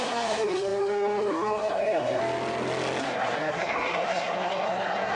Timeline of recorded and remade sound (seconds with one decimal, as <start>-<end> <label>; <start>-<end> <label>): 0.0-2.2 remade; 2.2-3.0 recorded; 3.0-5.1 remade